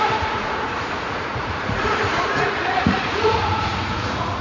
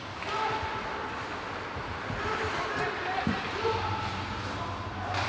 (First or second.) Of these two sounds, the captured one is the second